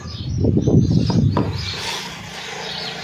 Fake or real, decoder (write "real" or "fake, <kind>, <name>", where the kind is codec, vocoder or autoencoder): real